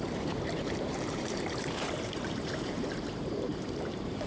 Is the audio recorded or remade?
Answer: remade